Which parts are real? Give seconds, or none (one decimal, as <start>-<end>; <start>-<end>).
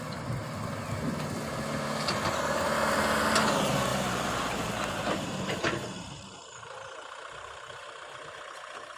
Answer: 0.0-3.9; 8.5-9.0